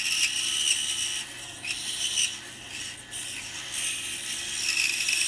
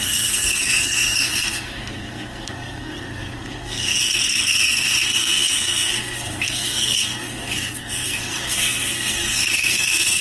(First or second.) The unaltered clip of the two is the first